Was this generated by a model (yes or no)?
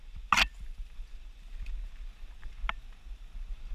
no